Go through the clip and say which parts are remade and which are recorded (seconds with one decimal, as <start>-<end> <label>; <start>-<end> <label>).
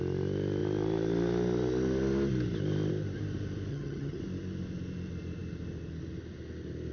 0.0-3.7 recorded; 3.7-4.2 remade; 4.2-6.9 recorded